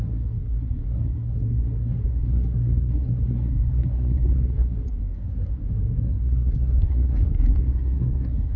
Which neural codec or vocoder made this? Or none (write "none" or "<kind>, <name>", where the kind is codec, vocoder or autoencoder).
codec, SNAC